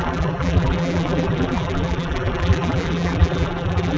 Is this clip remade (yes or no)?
yes